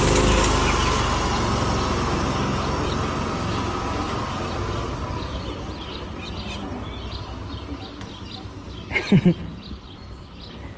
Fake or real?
real